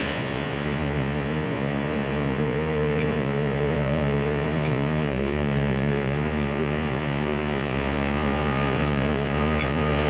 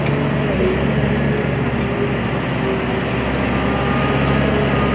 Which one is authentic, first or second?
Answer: second